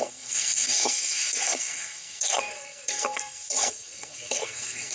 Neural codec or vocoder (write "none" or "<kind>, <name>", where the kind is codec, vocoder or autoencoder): codec, SNAC